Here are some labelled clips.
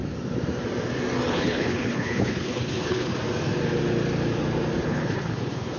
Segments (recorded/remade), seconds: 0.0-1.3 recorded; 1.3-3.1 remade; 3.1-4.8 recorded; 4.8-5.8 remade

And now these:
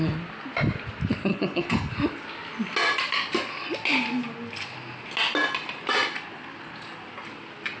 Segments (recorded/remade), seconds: 0.0-1.3 recorded; 1.3-1.9 remade; 1.9-7.8 recorded

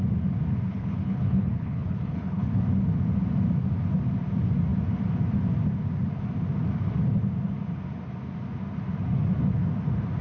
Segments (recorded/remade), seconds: 0.0-0.7 recorded; 0.7-2.6 remade; 2.6-10.2 recorded

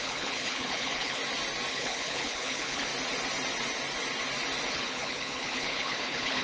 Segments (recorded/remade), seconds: 0.0-1.2 remade; 1.2-1.7 recorded; 1.7-2.9 remade; 2.9-4.7 recorded; 4.7-6.4 remade

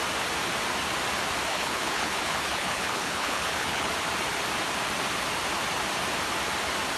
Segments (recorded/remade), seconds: 0.0-1.5 recorded; 1.5-3.9 remade; 3.9-7.0 recorded

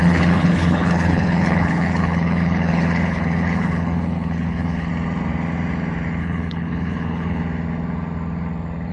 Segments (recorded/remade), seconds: 0.0-4.9 remade; 4.9-6.2 recorded; 6.2-7.4 remade; 7.4-8.9 recorded

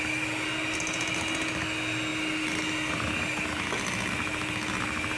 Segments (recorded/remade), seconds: 0.0-5.2 recorded

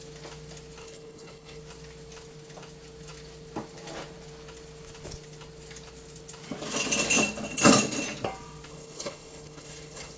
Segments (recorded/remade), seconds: 0.0-0.8 recorded; 0.8-1.6 remade; 1.6-8.7 recorded; 8.7-10.2 remade